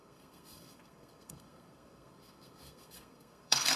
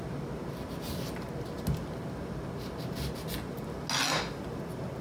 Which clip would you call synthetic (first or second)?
first